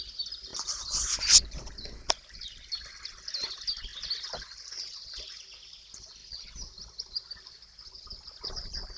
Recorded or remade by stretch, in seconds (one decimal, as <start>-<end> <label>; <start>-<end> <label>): 0.0-9.0 recorded